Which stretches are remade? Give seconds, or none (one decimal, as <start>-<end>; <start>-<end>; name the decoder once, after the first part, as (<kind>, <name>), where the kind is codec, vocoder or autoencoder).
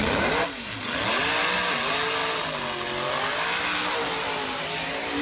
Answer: none